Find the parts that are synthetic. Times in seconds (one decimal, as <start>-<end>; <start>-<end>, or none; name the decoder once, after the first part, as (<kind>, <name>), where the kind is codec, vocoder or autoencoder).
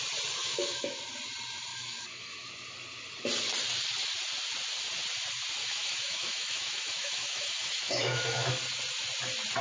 0.4-1.0 (autoencoder, DAC-VAE); 1.7-2.5; 5.6-8.5